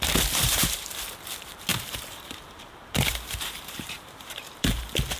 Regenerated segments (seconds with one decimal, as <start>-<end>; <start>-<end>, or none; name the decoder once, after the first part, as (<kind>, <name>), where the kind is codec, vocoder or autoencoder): 0.4-0.9 (vocoder, BigVGAN v2); 1.7-4.8